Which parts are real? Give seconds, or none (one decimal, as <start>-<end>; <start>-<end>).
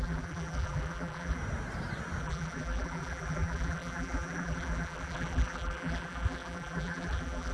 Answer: 1.4-2.2